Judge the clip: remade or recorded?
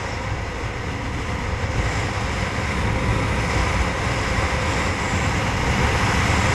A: recorded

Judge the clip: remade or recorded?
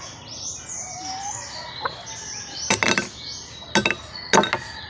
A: recorded